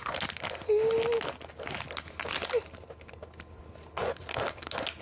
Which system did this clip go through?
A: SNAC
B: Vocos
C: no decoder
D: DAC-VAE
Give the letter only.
C